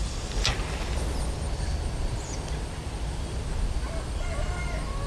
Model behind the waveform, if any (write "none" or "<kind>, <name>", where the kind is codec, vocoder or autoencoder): none